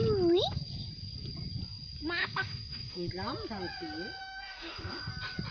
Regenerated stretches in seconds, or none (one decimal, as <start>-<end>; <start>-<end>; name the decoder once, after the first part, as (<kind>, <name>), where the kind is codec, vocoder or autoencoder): 2.2-3.1 (autoencoder, DAC-VAE); 4.2-5.1